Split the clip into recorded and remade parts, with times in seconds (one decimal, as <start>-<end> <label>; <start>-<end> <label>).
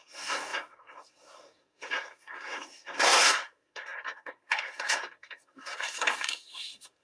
0.0-7.0 remade